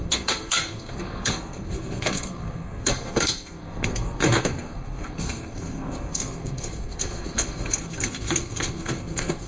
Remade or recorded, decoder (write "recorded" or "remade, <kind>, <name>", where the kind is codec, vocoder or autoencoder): remade, codec, SNAC